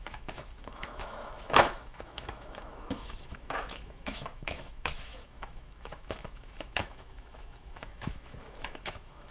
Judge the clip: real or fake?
fake